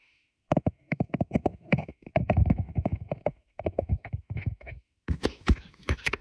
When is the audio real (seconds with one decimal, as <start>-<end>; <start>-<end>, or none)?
none

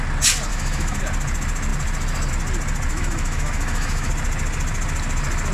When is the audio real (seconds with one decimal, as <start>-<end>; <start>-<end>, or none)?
0.0-0.5; 1.0-2.9; 4.1-5.5

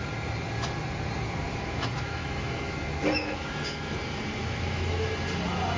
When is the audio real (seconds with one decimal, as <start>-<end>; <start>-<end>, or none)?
0.0-1.5; 3.5-4.4; 5.1-5.8

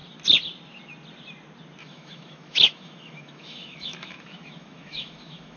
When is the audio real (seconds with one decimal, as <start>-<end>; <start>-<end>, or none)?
0.0-1.8

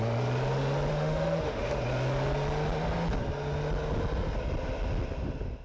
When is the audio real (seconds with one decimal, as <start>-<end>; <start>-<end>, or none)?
0.0-0.9; 1.8-5.6

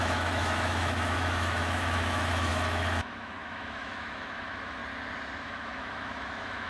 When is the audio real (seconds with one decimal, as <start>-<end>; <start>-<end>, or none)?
4.8-5.4